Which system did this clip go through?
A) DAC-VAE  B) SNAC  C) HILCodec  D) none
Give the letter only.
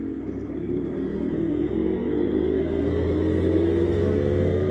B